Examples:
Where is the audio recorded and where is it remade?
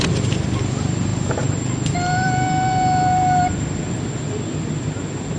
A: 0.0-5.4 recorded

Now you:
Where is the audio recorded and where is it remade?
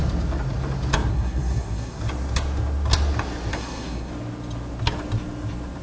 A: 0.0-1.1 recorded; 1.1-2.0 remade; 2.0-3.5 recorded; 3.5-4.1 remade; 4.1-5.8 recorded